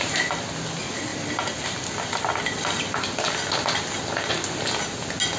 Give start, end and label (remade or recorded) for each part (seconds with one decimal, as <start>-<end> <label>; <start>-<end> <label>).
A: 0.0-5.4 recorded